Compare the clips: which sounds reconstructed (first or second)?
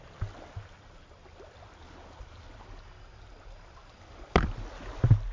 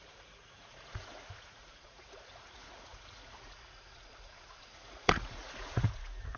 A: second